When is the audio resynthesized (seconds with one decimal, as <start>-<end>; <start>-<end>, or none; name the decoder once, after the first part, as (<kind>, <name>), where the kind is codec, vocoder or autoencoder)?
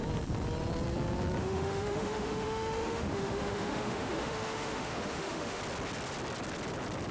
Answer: 1.4-5.6 (autoencoder, DAC-VAE)